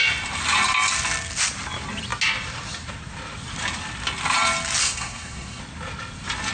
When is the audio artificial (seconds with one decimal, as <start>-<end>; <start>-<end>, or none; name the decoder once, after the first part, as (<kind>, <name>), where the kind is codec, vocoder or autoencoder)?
4.8-5.6 (codec, SNAC)